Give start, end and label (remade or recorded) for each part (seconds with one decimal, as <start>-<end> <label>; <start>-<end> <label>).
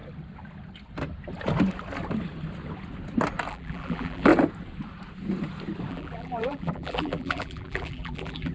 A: 0.0-3.5 recorded; 3.5-4.3 remade; 4.3-5.9 recorded; 5.9-8.5 remade